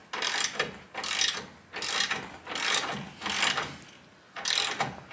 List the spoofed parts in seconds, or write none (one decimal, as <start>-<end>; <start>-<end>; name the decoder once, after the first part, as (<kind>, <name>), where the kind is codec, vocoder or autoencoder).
none